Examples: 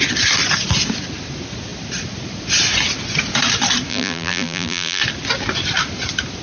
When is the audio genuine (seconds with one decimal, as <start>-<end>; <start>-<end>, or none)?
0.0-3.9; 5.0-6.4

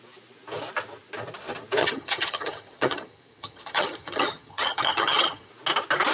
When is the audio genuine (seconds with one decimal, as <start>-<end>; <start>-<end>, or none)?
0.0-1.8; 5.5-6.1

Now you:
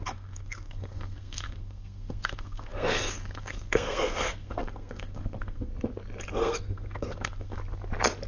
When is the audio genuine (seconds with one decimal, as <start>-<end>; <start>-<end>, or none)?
5.7-6.3; 7.6-8.3

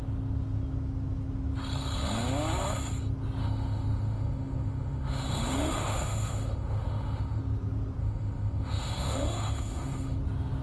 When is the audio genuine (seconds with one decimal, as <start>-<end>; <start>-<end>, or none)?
0.0-3.4; 7.4-8.0; 10.2-10.6

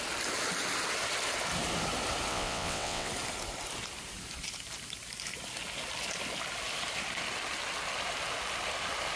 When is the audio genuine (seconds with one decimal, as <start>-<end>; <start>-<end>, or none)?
0.0-2.3; 3.1-9.2

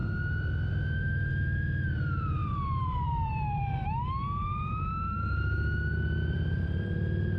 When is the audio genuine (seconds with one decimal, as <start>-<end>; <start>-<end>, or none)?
0.0-0.7; 3.8-6.3